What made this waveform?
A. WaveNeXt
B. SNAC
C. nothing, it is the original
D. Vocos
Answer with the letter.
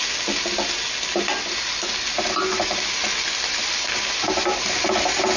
C